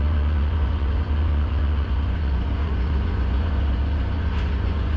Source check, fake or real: fake